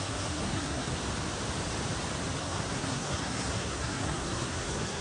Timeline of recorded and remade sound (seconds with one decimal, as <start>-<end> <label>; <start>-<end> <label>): 0.0-1.0 remade; 1.0-2.4 recorded; 2.4-5.0 remade